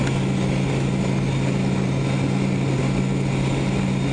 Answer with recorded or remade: recorded